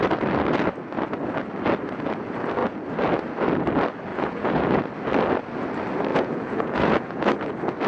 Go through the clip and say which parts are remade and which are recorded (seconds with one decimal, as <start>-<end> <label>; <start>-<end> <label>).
0.0-4.1 recorded; 4.1-4.8 remade; 4.8-6.1 recorded; 6.1-7.5 remade; 7.5-7.9 recorded